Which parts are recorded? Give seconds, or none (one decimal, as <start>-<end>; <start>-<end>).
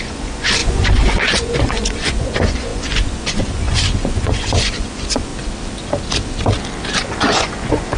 5.3-6.9